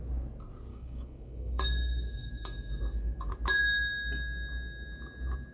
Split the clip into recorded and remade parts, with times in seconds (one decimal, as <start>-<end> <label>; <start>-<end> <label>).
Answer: 0.0-0.7 recorded; 0.7-3.3 remade; 3.3-5.5 recorded